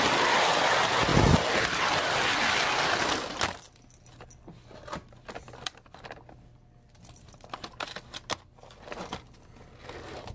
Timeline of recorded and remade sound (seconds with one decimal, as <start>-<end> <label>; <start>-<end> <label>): 0.0-10.3 recorded